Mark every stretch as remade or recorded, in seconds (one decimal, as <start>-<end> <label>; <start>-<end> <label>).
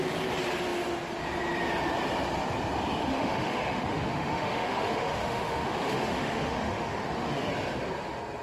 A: 0.0-3.0 recorded; 3.0-7.5 remade; 7.5-8.4 recorded